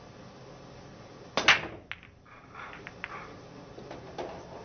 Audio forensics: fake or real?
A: real